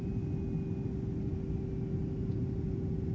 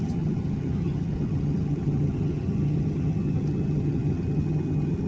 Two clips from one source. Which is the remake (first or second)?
second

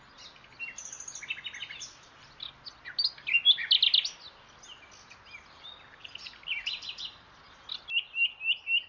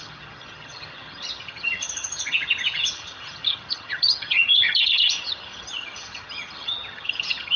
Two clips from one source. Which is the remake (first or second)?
second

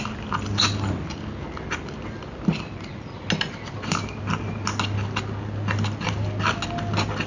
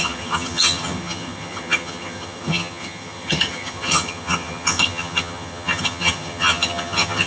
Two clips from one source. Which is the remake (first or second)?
second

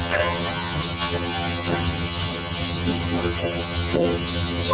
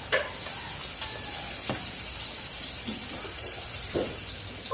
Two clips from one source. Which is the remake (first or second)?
first